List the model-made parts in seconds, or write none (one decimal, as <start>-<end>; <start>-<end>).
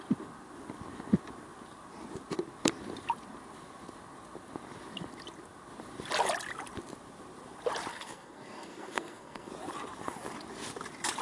7.9-9.5